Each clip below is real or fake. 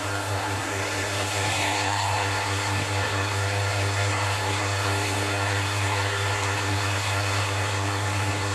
fake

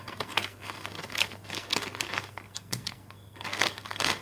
fake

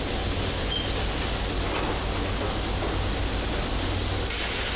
real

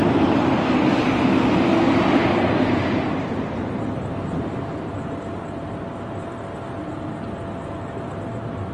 real